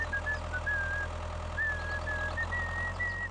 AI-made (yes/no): no